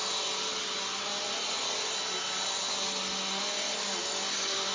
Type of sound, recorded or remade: recorded